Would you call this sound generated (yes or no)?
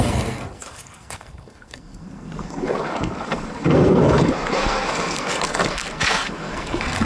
yes